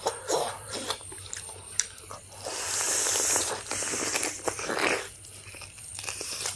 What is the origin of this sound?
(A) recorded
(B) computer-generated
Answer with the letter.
B